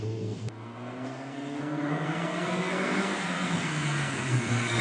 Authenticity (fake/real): fake